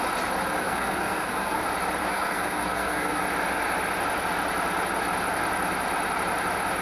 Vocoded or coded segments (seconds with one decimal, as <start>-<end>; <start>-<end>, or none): 0.6-1.6; 2.0-3.2